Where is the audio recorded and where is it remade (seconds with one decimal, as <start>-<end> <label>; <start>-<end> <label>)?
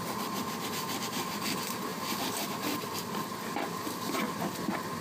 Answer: 0.0-5.0 recorded